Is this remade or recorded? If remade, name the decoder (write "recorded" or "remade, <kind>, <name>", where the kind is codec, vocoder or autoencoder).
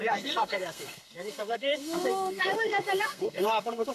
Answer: remade, codec, SNAC